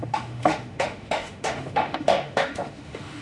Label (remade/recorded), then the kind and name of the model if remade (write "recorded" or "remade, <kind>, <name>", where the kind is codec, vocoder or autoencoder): remade, autoencoder, DAC-VAE